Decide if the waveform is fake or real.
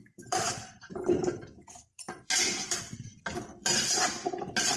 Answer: fake